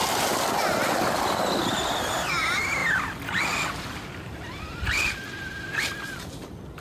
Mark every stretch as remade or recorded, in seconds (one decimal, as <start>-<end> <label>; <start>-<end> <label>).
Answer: 0.0-6.8 recorded